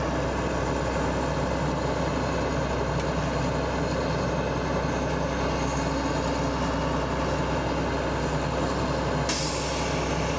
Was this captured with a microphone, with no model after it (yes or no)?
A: yes